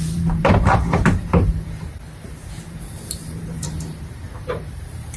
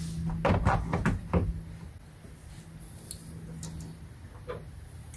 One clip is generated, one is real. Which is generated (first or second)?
first